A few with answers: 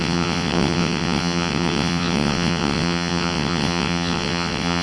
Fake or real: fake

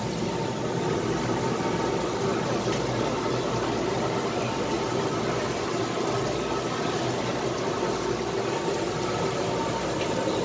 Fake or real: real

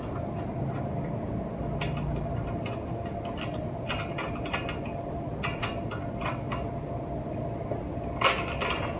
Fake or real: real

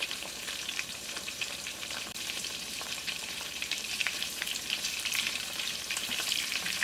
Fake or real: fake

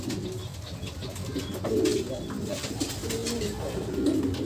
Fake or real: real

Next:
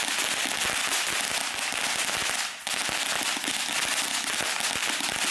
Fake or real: real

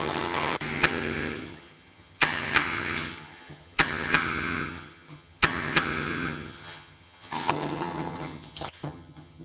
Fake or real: fake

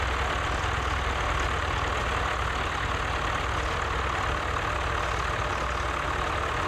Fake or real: real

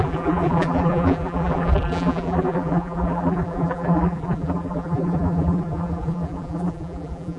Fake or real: fake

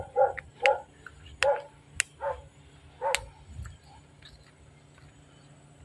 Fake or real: real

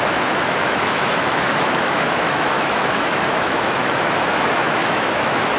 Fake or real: fake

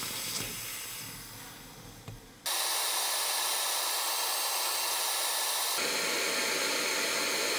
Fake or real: real